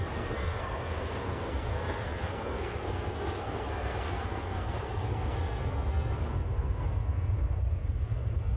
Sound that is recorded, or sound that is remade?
remade